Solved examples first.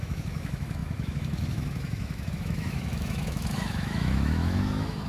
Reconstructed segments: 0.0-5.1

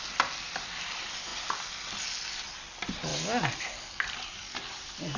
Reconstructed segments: none

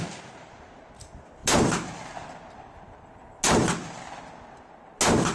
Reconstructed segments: none

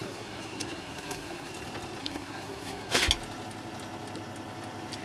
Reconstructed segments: 0.0-1.5; 2.0-3.1

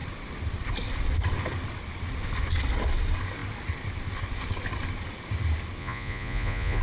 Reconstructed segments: 5.8-6.8

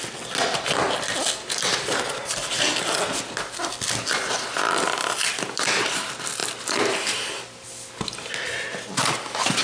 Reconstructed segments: none

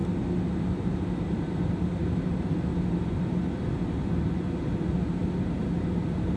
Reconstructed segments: none

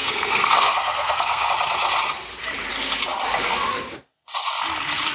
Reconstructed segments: 0.0-1.5